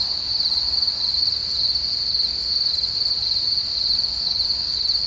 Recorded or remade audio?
recorded